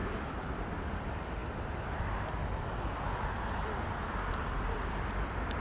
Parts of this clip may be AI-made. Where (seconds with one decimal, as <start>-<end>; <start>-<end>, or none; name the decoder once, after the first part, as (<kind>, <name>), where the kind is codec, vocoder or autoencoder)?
0.0-1.4 (vocoder, BigVGAN v2); 4.3-5.6